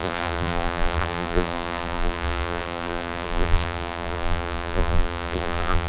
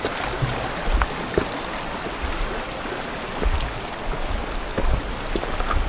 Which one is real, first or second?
second